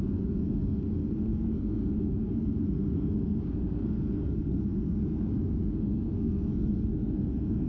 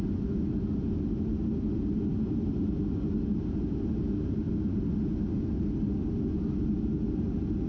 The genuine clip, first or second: second